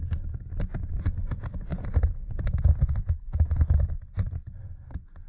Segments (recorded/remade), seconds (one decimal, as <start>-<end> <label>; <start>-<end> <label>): 0.0-5.3 recorded